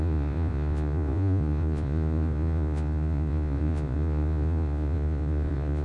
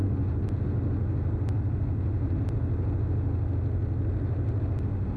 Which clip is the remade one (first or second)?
first